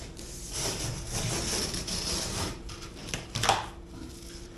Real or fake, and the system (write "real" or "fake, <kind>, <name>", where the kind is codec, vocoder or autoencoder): fake, vocoder, BigVGAN v2